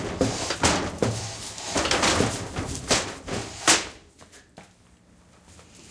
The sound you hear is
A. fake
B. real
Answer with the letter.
B